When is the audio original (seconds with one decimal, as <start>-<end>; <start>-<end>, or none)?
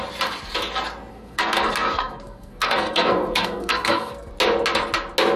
0.0-1.1; 4.3-5.4